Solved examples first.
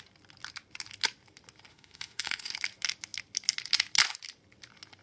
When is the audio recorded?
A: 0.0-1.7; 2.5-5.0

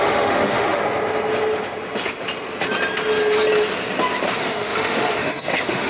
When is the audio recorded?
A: 0.8-4.3

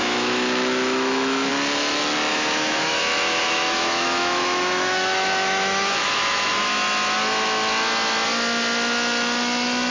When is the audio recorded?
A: 1.5-2.3; 6.6-9.9

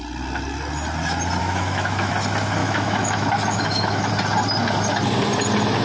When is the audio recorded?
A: 0.0-1.4; 2.1-2.6; 4.1-5.8

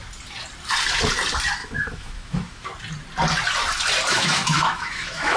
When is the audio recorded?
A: 0.0-1.6; 2.7-4.1

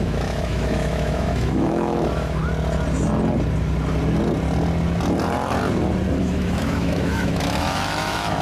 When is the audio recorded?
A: 2.4-6.2

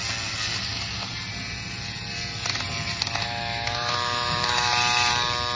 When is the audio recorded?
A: 0.0-3.2; 4.7-5.5